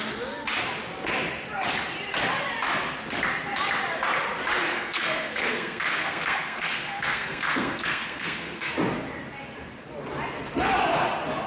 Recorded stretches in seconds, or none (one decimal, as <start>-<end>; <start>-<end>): 0.0-4.7; 8.7-11.5